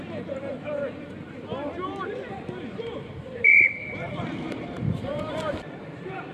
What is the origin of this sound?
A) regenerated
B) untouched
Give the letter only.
A